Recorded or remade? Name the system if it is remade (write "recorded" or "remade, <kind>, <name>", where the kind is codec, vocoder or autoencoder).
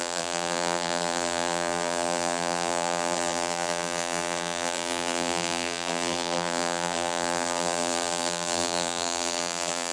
remade, vocoder, BigVGAN v2